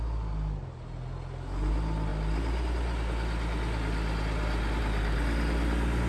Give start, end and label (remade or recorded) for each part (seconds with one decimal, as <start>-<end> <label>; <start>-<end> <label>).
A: 0.0-6.1 recorded